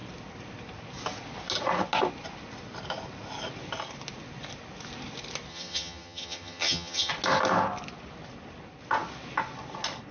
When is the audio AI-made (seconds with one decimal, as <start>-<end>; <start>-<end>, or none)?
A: 5.5-7.1